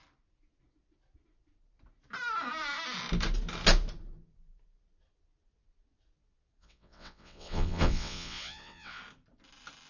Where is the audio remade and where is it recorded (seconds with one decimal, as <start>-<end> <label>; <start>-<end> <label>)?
0.0-6.6 recorded; 6.6-9.0 remade; 9.0-9.9 recorded